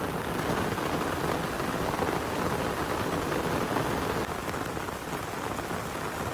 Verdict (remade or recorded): recorded